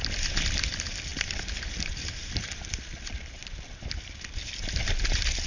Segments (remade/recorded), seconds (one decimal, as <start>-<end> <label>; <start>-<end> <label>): 0.0-5.5 recorded